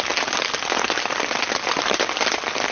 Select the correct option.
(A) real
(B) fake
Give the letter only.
A